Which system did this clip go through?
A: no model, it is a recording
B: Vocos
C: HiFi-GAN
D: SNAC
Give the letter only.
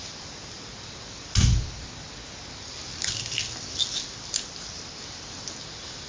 A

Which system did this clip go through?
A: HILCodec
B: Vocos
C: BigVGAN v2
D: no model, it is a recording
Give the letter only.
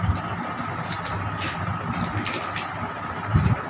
D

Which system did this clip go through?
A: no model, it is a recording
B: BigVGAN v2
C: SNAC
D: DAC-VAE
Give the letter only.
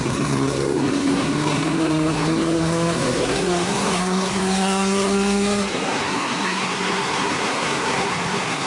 C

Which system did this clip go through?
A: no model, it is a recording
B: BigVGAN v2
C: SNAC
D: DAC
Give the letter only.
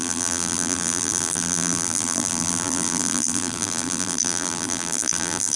B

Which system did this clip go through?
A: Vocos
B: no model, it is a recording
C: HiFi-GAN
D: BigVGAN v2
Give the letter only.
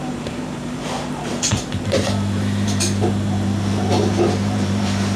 D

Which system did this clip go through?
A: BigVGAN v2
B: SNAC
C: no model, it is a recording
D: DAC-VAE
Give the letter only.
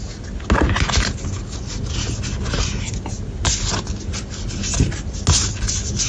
C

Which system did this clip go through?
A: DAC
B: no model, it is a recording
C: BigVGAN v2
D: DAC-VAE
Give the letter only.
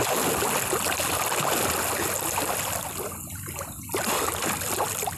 B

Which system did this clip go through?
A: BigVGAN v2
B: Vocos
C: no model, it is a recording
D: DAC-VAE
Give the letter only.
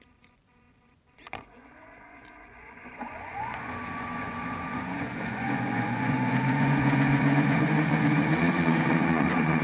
B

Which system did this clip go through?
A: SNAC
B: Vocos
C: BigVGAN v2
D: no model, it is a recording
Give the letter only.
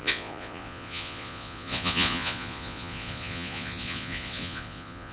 B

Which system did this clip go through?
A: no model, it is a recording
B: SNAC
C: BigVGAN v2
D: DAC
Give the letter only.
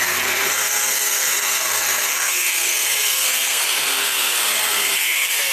B